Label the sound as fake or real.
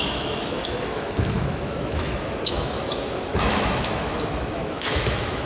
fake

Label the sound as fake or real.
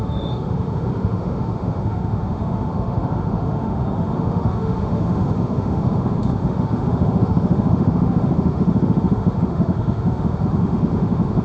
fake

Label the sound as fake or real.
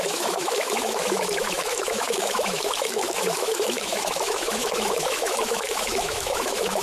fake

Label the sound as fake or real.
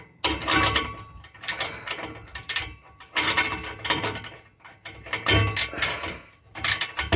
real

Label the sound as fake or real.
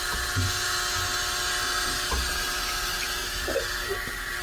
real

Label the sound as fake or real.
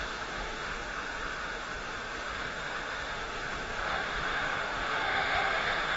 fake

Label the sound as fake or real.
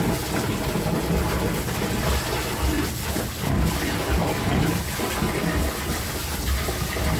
real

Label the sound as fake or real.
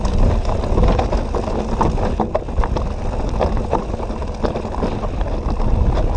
real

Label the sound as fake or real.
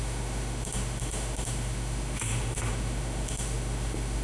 fake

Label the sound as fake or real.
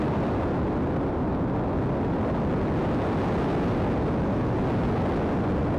real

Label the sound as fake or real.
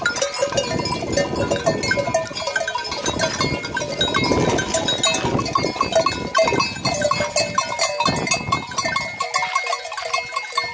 real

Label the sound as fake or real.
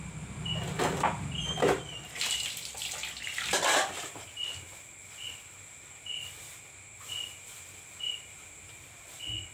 real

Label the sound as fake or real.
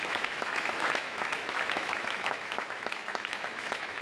fake